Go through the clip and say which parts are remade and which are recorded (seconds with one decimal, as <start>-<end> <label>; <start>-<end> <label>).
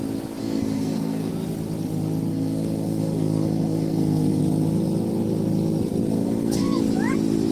0.0-0.4 recorded; 0.4-1.3 remade; 1.3-2.3 recorded; 2.3-4.4 remade; 4.4-6.1 recorded; 6.1-6.8 remade; 6.8-7.5 recorded